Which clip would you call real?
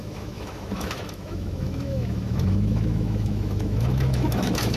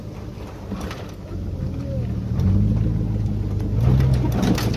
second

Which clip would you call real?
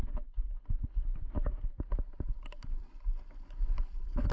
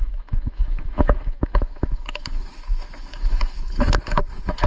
first